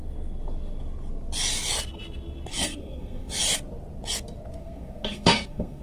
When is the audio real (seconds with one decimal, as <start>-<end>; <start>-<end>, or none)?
0.0-2.5; 3.4-4.6

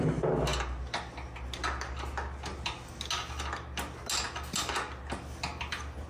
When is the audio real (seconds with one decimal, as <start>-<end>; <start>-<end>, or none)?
0.0-6.1

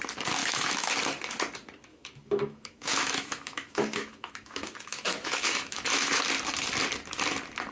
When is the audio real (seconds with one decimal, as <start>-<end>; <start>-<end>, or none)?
0.0-0.4; 0.9-1.9; 6.2-7.7